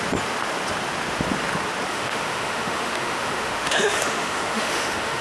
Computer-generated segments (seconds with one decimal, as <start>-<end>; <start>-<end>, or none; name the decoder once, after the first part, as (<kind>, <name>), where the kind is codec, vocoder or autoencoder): 1.9-5.2 (autoencoder, DAC-VAE)